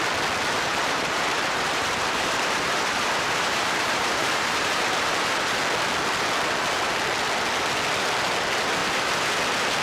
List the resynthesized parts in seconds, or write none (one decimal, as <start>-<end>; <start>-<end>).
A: 0.7-5.6; 8.8-9.3